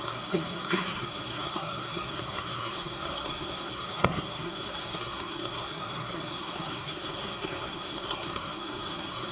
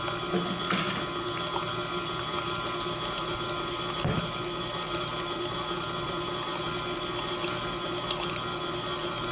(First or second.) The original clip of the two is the second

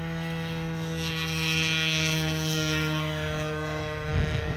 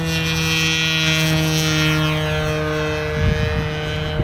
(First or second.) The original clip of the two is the second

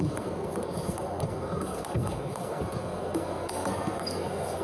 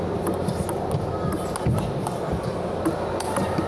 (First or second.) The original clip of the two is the second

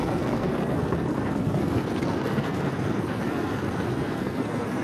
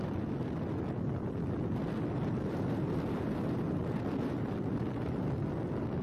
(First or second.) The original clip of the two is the second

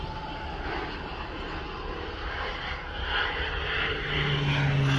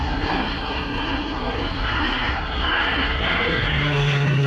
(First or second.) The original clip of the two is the first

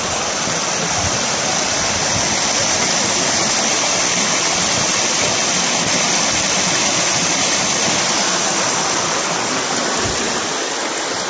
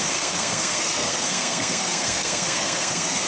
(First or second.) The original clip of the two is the first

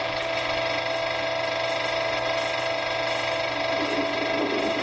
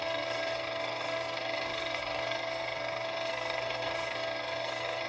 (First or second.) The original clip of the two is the first